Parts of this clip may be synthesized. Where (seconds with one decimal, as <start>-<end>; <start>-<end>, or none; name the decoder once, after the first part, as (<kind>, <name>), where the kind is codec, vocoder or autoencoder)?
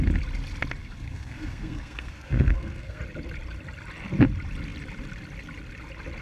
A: 0.8-3.0 (codec, SNAC)